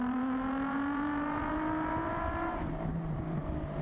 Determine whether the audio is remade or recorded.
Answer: remade